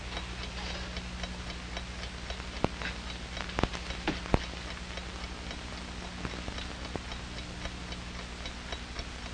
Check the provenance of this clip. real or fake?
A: real